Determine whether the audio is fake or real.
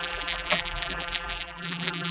fake